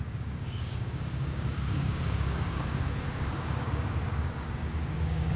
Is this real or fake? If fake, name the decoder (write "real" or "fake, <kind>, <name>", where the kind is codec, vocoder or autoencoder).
fake, codec, DAC